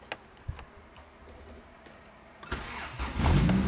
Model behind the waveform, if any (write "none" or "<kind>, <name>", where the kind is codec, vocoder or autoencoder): none